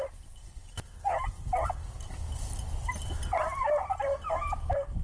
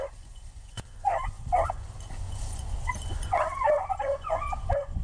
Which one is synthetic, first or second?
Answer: second